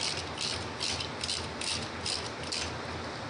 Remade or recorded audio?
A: recorded